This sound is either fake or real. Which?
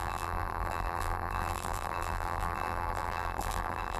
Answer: fake